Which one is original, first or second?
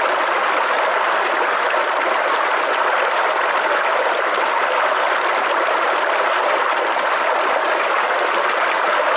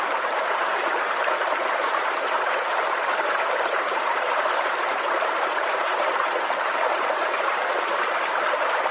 first